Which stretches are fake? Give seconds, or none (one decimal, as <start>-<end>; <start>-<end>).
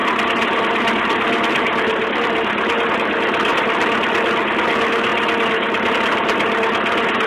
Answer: none